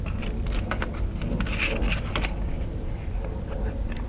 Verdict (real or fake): real